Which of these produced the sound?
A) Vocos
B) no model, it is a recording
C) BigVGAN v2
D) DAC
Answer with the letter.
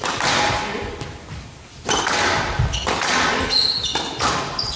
B